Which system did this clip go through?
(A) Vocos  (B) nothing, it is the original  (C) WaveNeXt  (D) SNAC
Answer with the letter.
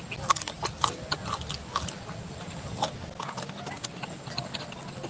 B